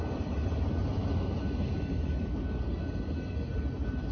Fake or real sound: real